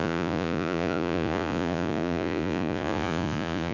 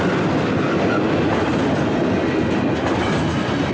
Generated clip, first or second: first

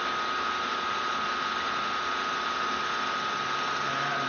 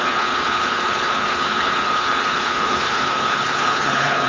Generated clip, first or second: second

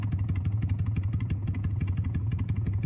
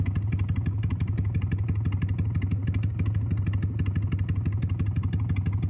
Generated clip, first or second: first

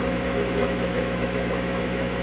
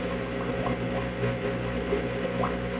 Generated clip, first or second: first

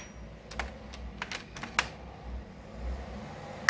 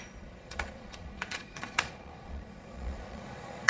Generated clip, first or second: second